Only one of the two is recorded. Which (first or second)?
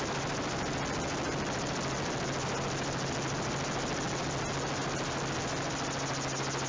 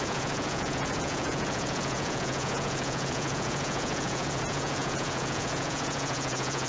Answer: first